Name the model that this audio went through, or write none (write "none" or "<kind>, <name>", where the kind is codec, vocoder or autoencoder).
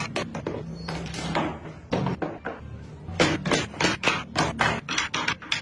none